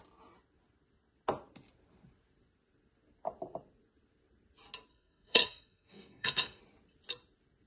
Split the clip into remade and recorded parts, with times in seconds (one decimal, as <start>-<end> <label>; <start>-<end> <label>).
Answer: 0.0-4.9 recorded; 4.9-6.6 remade; 6.6-7.7 recorded